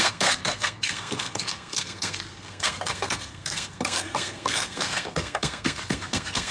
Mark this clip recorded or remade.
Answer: remade